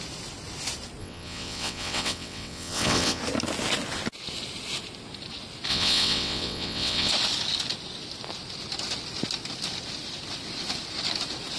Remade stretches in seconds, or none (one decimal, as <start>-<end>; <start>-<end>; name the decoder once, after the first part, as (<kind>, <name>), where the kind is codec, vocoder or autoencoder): 1.0-3.2 (vocoder, WaveNeXt); 5.7-7.1